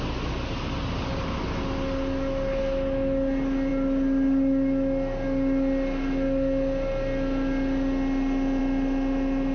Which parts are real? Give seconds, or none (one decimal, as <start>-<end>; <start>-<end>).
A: 0.0-9.5